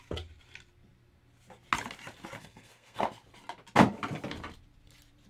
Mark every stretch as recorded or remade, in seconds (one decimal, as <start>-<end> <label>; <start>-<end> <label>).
0.0-2.4 recorded; 2.4-3.0 remade; 3.0-5.3 recorded